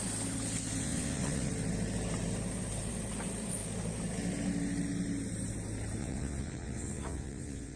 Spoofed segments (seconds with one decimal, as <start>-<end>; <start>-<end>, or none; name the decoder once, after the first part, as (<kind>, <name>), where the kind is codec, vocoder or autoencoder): 0.8-1.5 (vocoder, WaveNeXt); 6.0-7.8